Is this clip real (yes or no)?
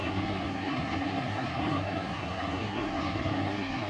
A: no